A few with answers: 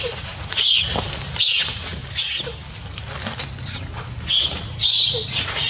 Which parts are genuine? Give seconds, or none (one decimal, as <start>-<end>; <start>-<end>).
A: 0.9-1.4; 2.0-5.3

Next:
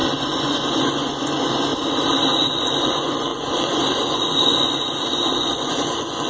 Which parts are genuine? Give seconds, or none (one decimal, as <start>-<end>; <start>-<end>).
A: 1.7-2.5

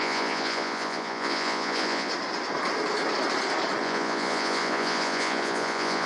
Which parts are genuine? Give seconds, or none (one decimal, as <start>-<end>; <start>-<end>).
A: 2.1-3.8

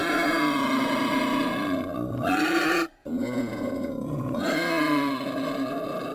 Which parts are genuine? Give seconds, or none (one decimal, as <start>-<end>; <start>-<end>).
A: 0.0-3.0; 4.5-6.1